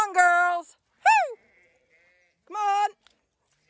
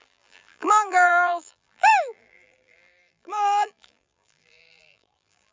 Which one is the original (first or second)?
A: first